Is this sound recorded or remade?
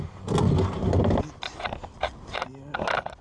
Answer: recorded